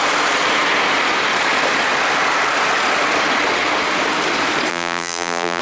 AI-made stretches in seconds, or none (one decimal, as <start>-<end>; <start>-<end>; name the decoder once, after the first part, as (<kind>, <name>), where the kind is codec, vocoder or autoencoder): 4.7-5.6 (vocoder, BigVGAN v2)